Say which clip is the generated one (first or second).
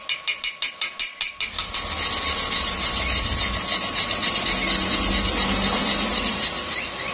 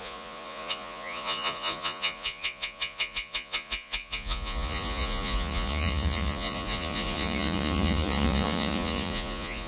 second